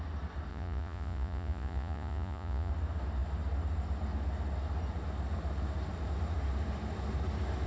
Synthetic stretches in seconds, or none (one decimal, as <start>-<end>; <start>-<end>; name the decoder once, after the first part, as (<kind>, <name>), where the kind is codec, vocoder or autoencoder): 0.5-2.7 (vocoder, Vocos)